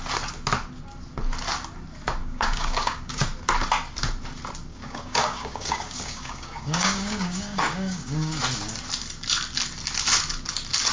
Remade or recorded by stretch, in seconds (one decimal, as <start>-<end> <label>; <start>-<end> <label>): 0.0-2.2 recorded; 2.2-3.2 remade; 3.2-4.7 recorded; 4.7-8.4 remade; 8.4-10.9 recorded